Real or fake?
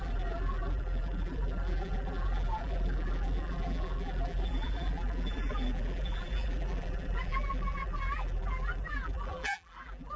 fake